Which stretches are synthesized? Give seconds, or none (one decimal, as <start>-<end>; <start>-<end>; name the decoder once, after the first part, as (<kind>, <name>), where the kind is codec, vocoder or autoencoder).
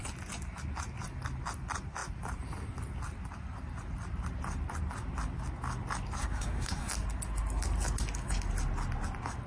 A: 6.2-6.9 (codec, SNAC)